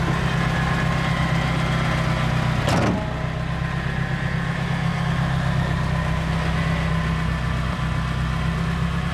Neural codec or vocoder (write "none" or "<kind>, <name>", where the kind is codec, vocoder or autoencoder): none